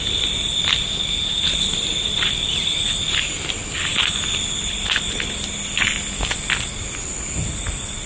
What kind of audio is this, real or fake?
real